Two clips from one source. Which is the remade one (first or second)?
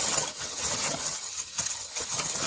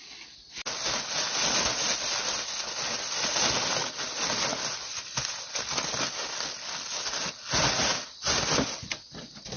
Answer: first